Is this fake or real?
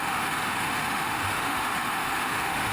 fake